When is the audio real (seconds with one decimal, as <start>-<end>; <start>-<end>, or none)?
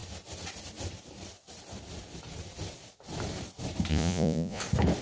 0.0-3.9; 4.6-5.0